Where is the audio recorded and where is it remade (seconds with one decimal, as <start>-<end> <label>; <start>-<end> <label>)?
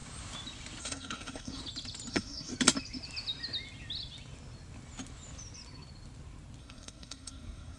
0.0-0.8 recorded; 0.8-1.6 remade; 1.6-2.1 recorded; 2.1-2.5 remade; 2.5-6.6 recorded; 6.6-7.8 remade